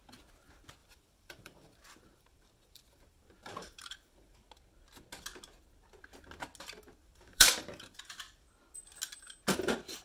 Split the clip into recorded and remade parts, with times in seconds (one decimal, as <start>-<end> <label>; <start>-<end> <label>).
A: 0.0-0.8 recorded; 0.8-4.5 remade; 4.5-7.0 recorded; 7.0-8.0 remade; 8.0-10.0 recorded